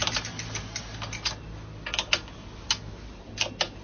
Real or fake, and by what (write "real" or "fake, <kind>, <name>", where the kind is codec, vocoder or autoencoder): real